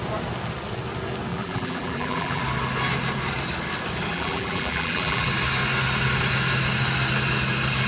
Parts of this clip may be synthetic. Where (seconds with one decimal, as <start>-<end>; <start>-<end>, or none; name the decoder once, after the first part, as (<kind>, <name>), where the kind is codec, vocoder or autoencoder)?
1.3-2.4 (vocoder, BigVGAN v2); 4.1-5.3

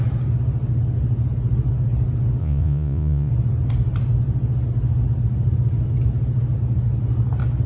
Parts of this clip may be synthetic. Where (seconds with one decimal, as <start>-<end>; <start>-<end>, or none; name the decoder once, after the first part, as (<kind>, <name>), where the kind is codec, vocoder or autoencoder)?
2.4-3.3 (vocoder, Vocos)

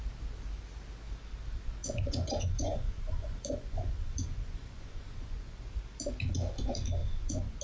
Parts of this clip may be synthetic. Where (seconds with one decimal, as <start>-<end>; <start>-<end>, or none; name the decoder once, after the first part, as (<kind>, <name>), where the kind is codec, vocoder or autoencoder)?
1.8-5.6 (vocoder, Vocos); 7.0-7.6

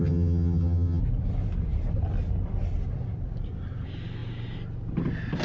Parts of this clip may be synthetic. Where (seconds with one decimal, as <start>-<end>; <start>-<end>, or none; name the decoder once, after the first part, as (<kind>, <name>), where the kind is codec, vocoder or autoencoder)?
0.0-1.0 (vocoder, HiFi-GAN)